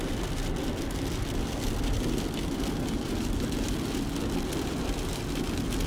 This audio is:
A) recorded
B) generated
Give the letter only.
A